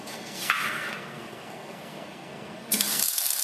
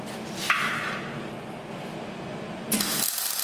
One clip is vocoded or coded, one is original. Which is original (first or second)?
second